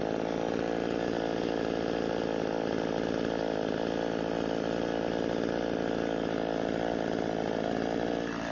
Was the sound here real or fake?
fake